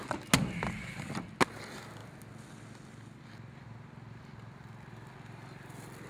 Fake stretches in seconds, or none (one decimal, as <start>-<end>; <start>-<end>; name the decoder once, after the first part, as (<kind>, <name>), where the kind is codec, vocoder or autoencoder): none

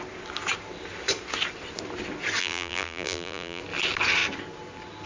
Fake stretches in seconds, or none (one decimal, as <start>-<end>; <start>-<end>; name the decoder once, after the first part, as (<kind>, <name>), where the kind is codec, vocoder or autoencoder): 2.4-3.6 (vocoder, BigVGAN v2)

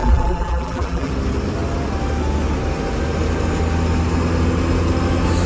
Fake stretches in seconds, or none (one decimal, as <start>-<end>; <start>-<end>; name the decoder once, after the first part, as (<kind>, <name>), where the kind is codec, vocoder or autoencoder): 0.0-1.1 (vocoder, BigVGAN v2)